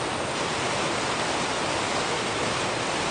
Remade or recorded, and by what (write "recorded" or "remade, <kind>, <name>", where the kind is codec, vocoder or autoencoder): recorded